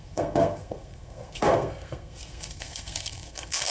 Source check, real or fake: fake